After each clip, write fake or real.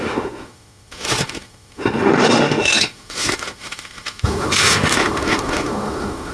fake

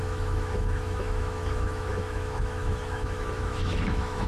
fake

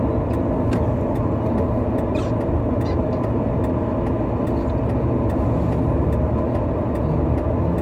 real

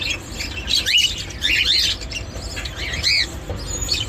real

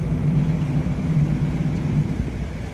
real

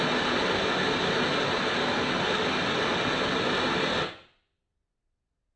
real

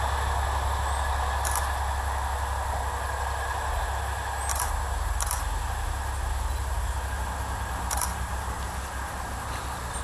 real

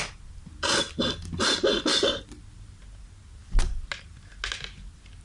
real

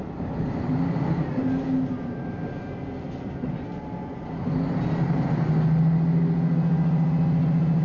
real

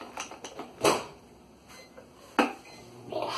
real